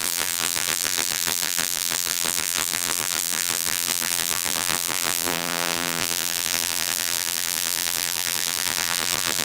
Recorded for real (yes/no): no